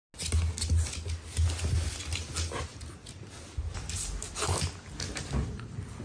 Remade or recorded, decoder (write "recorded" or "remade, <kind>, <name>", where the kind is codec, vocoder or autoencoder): recorded